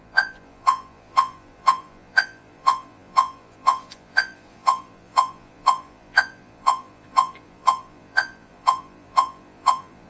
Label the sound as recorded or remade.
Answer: remade